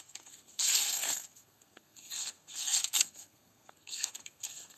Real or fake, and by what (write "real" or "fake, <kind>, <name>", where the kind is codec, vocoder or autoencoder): fake, codec, SNAC